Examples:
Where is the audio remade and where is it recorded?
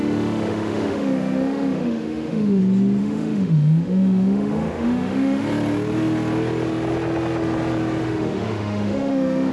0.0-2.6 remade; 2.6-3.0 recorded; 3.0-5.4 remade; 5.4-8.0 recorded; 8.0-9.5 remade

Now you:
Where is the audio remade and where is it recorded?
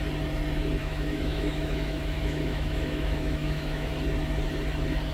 0.0-0.8 recorded; 0.8-3.9 remade; 3.9-5.1 recorded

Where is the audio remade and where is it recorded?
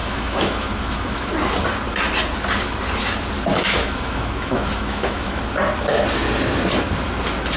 0.0-1.3 remade; 1.3-3.5 recorded; 3.5-5.4 remade; 5.4-7.6 recorded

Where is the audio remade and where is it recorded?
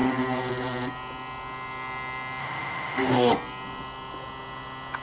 0.0-2.4 recorded; 2.4-3.3 remade; 3.3-5.0 recorded